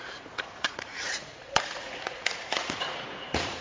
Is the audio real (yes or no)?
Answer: no